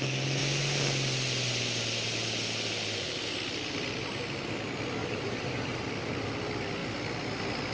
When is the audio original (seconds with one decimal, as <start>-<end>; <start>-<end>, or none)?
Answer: 0.0-5.0; 5.9-7.7

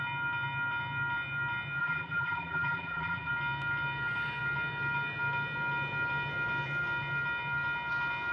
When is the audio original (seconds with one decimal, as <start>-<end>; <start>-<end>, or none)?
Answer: 0.0-1.8; 3.3-8.3

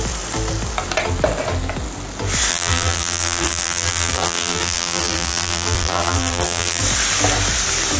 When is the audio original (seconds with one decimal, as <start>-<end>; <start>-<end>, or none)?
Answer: 0.0-2.5; 6.8-8.0